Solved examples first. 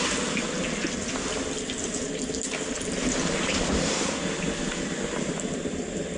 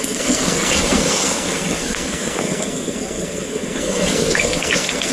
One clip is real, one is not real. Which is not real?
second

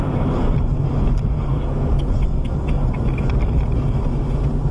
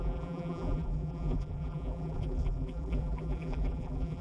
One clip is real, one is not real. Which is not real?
second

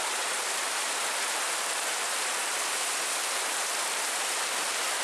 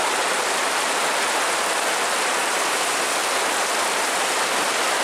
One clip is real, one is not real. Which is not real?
first